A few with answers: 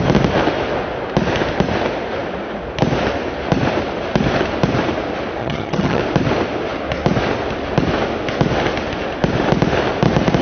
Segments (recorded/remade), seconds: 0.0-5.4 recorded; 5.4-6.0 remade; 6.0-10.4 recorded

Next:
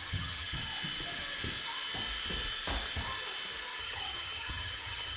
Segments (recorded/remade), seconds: 0.0-0.7 remade; 0.7-3.8 recorded; 3.8-5.2 remade

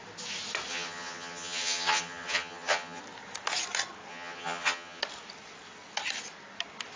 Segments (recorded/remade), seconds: 0.0-0.7 recorded; 0.7-3.0 remade; 3.0-4.1 recorded; 4.1-5.0 remade; 5.0-7.0 recorded

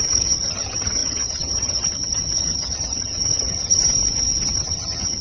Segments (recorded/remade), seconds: 0.0-3.8 remade; 3.8-4.5 recorded; 4.5-5.2 remade

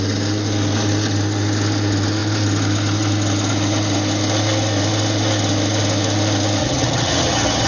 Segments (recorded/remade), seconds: 0.0-6.6 recorded; 6.6-7.7 remade

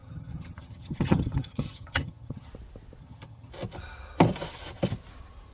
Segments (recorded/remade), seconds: 0.0-2.5 remade; 2.5-3.0 recorded; 3.0-3.5 remade; 3.5-5.5 recorded